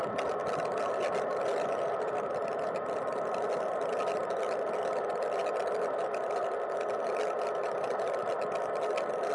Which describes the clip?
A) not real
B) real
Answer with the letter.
B